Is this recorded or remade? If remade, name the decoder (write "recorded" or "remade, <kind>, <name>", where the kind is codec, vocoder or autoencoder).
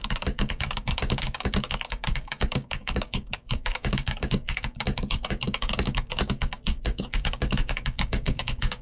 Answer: remade, codec, DAC